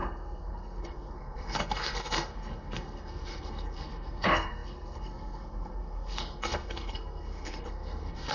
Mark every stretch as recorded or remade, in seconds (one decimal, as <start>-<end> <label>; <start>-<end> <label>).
0.0-8.3 remade